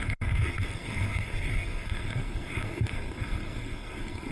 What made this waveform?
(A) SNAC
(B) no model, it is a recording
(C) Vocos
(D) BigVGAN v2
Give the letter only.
A